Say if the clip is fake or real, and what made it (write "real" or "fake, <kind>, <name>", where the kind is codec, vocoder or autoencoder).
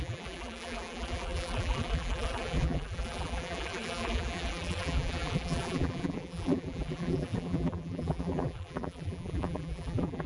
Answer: fake, vocoder, BigVGAN v2